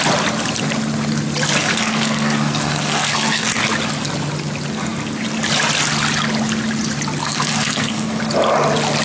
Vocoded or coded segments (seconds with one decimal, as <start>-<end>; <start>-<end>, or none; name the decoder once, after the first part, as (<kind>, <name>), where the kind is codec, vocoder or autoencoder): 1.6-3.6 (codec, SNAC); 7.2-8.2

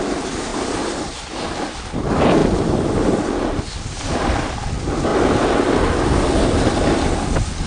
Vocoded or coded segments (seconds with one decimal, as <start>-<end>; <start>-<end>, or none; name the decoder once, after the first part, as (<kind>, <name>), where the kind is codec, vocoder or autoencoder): none

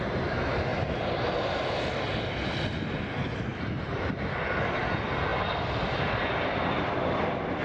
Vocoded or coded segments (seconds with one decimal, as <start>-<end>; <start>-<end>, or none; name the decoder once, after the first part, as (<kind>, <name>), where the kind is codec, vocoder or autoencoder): 0.7-1.9 (vocoder, BigVGAN v2); 3.5-4.2

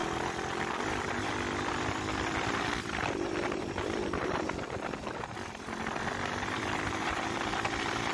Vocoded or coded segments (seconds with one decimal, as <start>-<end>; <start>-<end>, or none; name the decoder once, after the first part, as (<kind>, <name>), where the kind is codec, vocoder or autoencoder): 1.3-8.1 (vocoder, BigVGAN v2)